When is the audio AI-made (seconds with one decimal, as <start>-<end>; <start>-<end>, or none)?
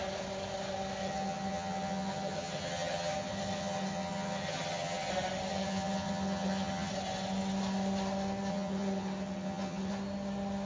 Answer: 1.0-5.1; 5.5-6.9; 8.5-9.9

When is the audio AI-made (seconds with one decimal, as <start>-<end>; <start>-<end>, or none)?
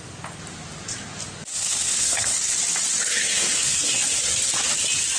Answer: 1.5-2.3; 3.2-4.0